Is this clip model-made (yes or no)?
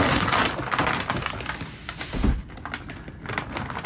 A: no